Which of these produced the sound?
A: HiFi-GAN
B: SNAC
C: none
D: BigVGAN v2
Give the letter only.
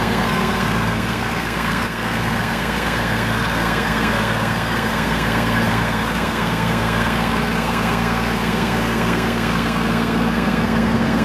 B